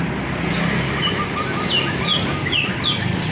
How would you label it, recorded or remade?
recorded